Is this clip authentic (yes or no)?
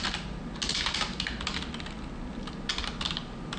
yes